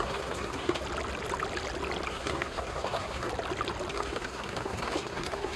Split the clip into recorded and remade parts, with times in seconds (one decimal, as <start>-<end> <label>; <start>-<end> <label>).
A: 0.0-0.8 remade; 0.8-2.1 recorded; 2.1-3.3 remade; 3.3-3.9 recorded; 3.9-5.6 remade